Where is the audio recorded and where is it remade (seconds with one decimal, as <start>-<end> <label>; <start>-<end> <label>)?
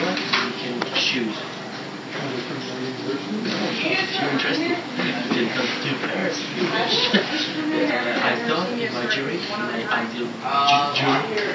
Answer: 0.0-11.5 recorded